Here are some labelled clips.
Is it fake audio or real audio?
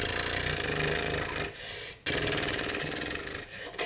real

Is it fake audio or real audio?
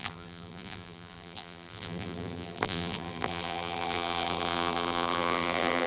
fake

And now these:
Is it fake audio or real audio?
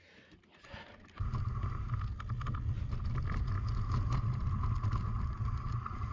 real